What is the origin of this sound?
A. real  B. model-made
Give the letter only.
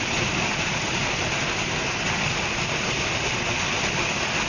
A